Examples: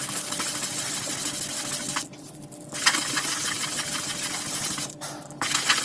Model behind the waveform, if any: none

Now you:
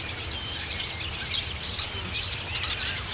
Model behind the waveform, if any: none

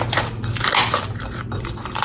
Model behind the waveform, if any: none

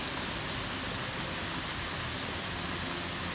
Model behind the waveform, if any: none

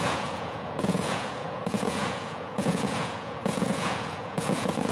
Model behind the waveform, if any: vocoder, Vocos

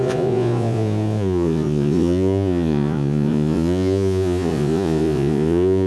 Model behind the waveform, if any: vocoder, Vocos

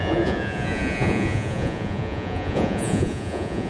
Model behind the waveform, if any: vocoder, Vocos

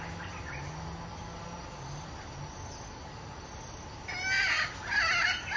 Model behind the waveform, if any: none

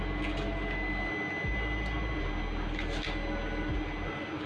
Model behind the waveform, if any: none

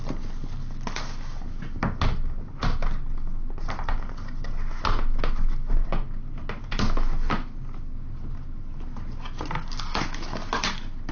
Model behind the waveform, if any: none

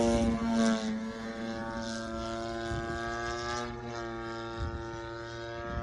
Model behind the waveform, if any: none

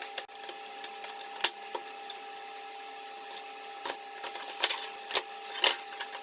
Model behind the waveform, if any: none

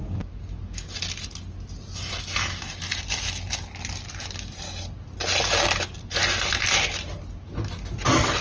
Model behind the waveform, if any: none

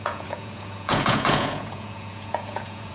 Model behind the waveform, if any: vocoder, Vocos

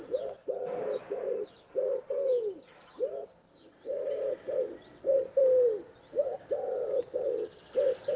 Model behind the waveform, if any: none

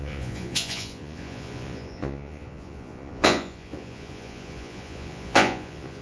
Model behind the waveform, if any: vocoder, Vocos